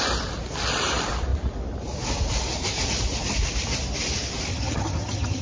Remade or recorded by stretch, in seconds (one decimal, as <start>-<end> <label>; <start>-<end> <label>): 0.0-4.5 recorded; 4.5-5.4 remade